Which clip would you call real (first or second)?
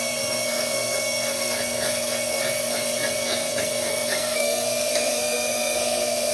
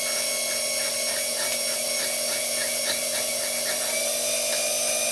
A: second